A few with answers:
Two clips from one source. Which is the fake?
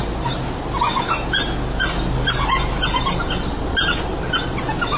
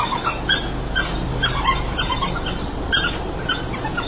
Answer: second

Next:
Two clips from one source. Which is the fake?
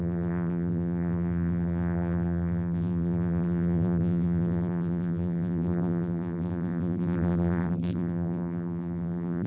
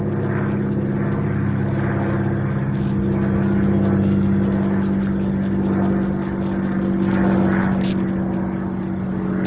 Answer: first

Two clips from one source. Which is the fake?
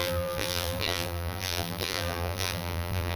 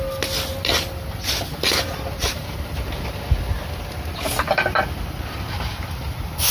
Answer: first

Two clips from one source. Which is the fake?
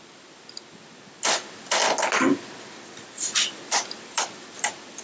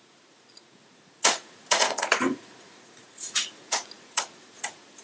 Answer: second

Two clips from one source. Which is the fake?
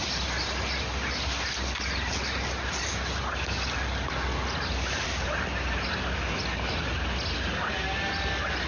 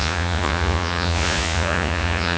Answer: second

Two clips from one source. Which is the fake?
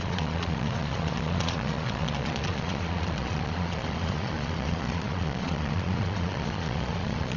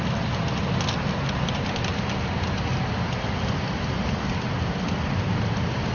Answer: first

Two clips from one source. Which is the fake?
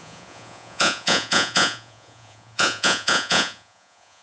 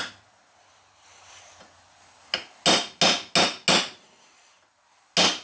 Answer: first